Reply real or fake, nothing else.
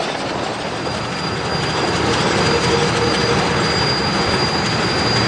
real